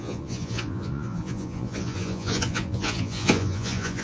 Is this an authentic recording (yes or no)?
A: no